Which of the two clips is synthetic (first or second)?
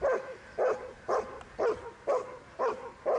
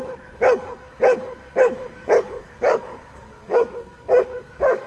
second